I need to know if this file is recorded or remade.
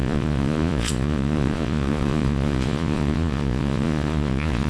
remade